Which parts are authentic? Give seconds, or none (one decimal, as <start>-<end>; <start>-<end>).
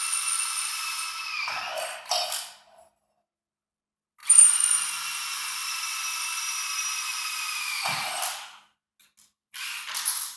0.0-4.2; 4.9-10.4